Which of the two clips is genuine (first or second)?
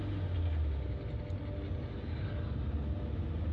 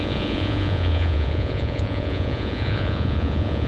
first